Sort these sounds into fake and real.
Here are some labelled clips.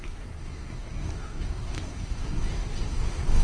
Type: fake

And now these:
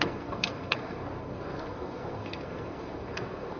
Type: fake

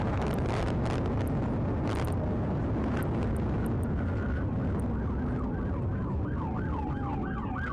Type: real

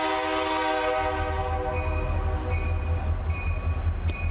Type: real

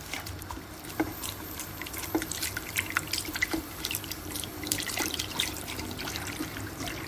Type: fake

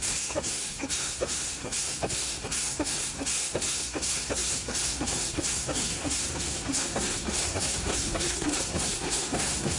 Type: fake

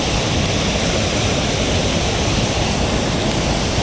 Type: real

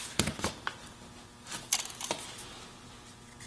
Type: real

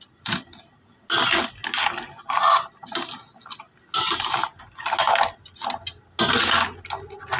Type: real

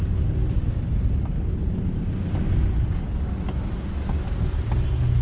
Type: real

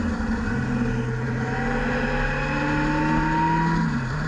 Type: real